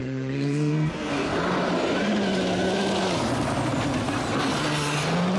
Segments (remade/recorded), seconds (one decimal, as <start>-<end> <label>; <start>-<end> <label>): 0.0-1.4 remade; 1.4-5.4 recorded